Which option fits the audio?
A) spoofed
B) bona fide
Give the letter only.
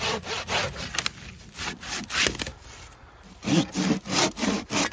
B